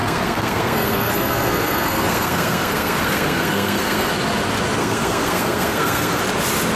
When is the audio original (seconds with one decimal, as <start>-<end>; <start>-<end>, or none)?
4.1-4.8; 6.2-6.8